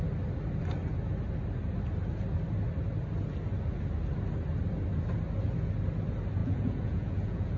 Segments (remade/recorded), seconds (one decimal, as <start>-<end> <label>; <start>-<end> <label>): 0.0-6.4 recorded; 6.4-7.6 remade